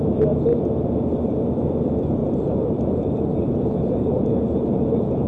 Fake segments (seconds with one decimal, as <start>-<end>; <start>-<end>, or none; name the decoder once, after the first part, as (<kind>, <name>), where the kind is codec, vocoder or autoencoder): 2.2-5.3 (vocoder, BigVGAN v2)